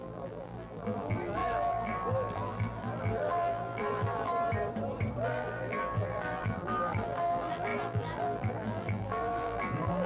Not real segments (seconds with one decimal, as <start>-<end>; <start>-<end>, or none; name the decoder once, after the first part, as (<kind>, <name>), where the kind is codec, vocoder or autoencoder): 0.0-4.3 (vocoder, BigVGAN v2); 5.2-10.1